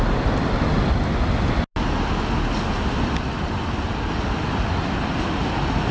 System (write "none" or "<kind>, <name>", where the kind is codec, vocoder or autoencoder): none